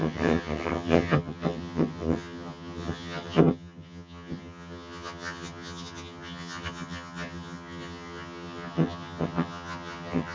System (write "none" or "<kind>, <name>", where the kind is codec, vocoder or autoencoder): vocoder, HiFi-GAN